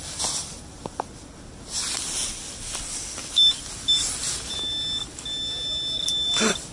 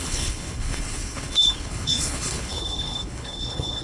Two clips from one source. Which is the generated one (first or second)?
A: second